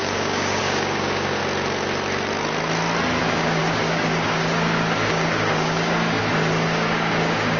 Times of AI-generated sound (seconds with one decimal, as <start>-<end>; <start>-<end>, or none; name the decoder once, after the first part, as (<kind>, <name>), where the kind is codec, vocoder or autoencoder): 0.0-1.4 (codec, DAC); 3.2-7.6